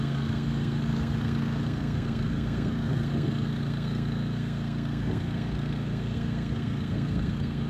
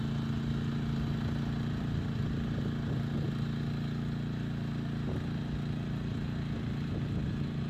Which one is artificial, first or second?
first